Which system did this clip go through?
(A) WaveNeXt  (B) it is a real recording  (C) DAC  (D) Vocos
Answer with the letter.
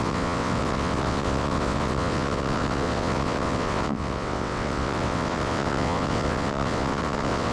A